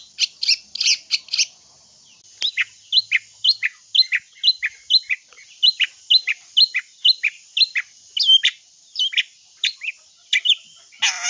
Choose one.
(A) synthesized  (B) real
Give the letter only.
B